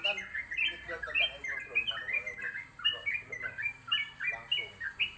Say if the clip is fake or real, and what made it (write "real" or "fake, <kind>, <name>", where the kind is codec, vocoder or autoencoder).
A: real